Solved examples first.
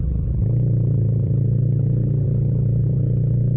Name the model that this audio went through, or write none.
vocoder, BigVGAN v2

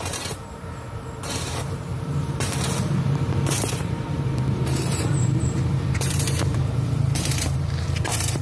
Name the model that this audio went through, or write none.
vocoder, BigVGAN v2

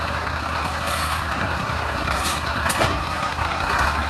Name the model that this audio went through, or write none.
codec, SNAC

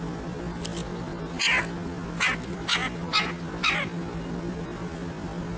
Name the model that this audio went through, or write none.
none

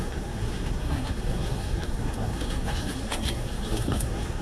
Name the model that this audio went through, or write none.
codec, SNAC